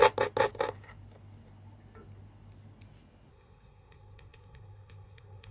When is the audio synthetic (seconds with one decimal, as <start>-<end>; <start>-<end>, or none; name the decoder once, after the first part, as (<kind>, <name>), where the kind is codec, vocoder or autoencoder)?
3.3-5.5 (codec, SNAC)